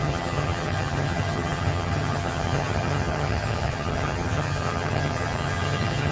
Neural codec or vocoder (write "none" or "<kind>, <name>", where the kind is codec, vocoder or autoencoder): vocoder, HiFi-GAN